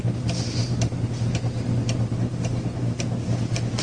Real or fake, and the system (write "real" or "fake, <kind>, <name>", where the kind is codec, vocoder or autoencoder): real